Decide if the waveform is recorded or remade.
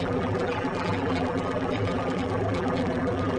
remade